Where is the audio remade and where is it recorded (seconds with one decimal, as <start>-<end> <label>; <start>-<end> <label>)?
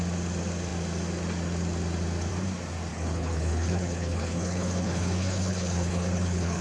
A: 0.0-2.9 recorded; 2.9-6.6 remade